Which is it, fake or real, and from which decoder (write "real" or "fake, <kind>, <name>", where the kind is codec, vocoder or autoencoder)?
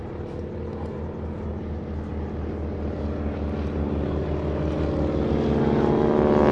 real